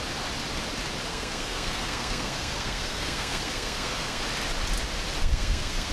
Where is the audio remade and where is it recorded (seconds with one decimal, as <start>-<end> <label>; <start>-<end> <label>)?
0.0-1.1 recorded; 1.1-4.2 remade; 4.2-5.2 recorded; 5.2-5.9 remade